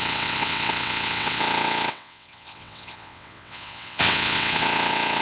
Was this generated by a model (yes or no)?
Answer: yes